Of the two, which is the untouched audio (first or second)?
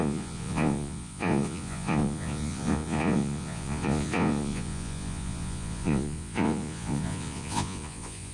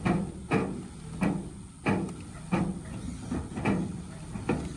second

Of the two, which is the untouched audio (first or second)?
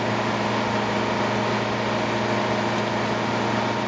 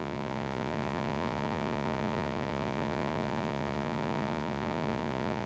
first